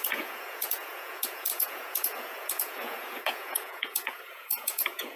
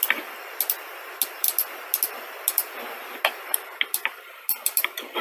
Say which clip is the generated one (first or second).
first